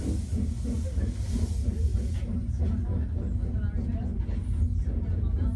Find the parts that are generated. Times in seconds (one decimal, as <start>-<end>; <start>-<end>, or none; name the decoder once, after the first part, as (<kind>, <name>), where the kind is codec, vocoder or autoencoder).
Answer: none